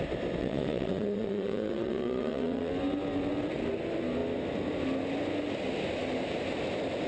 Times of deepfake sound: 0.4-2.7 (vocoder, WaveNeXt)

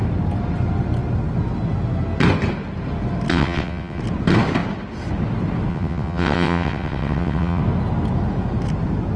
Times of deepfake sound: 3.3-4.0 (vocoder, WaveNeXt); 5.7-7.6

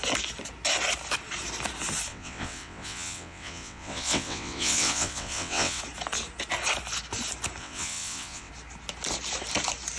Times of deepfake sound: 2.1-5.8 (vocoder, WaveNeXt); 7.6-8.5

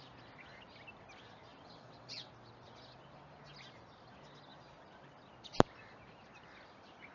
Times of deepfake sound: 1.5-2.3 (vocoder, WaveNeXt)